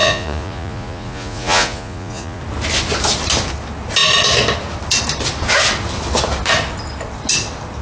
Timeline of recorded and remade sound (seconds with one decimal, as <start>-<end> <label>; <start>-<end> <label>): 0.0-2.4 remade; 2.4-7.8 recorded